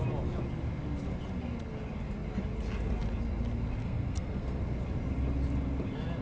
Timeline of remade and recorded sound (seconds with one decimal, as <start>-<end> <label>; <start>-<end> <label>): 0.0-3.8 recorded; 3.8-4.6 remade; 4.6-6.2 recorded